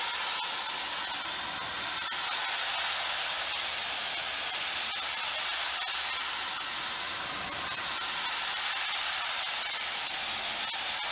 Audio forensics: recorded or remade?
recorded